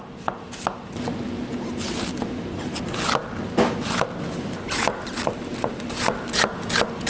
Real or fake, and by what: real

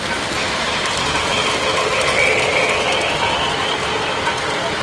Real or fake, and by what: real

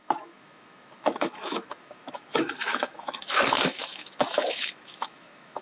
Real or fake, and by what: fake, autoencoder, DAC-VAE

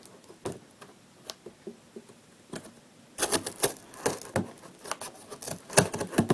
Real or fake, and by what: real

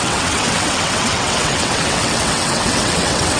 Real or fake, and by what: fake, vocoder, WaveNeXt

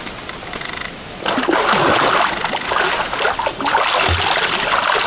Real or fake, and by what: real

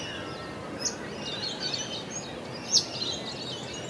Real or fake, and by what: real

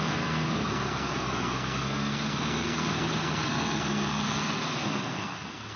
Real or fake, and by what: fake, codec, SNAC